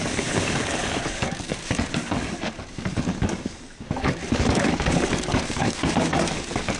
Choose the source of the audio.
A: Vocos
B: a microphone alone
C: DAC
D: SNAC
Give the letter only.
C